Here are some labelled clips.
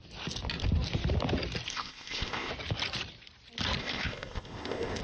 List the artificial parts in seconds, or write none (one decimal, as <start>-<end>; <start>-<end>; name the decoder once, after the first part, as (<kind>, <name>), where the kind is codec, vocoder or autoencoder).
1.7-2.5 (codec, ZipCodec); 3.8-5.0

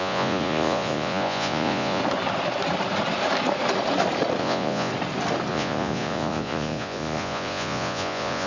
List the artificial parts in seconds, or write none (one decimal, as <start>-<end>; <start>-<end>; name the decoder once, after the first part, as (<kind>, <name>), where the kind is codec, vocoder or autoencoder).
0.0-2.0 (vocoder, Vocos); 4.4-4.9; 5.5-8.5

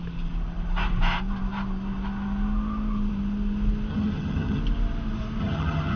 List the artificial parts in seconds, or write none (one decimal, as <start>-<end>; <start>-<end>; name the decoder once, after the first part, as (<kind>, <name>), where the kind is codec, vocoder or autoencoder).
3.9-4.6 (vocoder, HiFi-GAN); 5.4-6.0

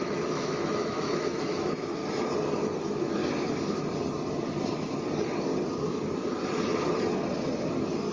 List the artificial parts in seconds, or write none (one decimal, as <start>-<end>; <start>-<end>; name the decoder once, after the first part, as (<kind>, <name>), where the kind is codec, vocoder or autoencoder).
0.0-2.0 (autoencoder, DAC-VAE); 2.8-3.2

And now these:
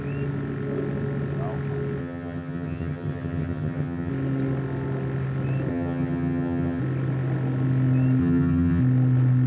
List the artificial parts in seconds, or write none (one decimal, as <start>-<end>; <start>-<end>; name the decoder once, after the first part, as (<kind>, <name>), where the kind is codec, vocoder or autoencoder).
2.0-4.1 (vocoder, HiFi-GAN); 5.7-6.8; 8.2-8.8